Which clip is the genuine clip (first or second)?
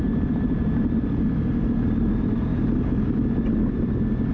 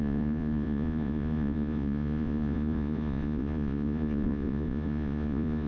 first